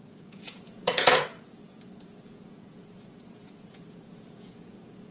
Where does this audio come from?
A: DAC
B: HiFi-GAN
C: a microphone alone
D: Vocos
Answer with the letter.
D